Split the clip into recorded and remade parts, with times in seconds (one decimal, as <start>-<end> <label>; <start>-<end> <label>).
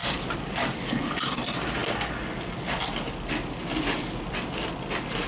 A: 0.0-5.3 recorded